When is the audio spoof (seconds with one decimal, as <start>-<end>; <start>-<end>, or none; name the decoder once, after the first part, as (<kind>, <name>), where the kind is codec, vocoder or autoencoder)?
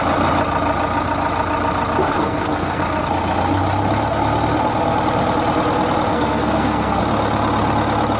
2.0-2.8 (codec, SNAC); 6.1-7.0